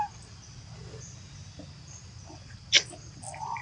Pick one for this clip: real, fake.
real